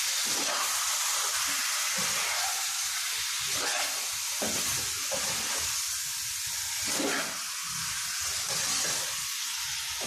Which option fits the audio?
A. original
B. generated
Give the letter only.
A